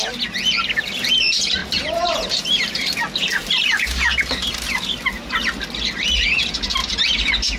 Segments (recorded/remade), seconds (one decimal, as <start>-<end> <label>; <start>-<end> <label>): 0.0-1.6 recorded; 1.6-3.0 remade; 3.0-3.4 recorded; 3.4-5.0 remade; 5.0-6.8 recorded; 6.8-7.6 remade